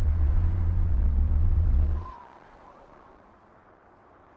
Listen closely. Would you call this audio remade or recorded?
remade